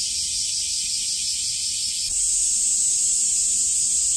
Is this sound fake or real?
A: real